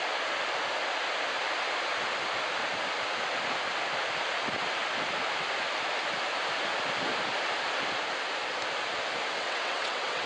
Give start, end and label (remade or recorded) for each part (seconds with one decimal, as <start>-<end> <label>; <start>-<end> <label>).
0.0-9.4 recorded; 9.4-10.3 remade